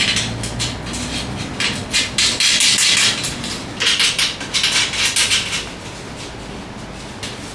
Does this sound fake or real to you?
real